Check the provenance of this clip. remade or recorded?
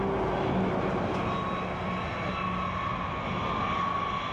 recorded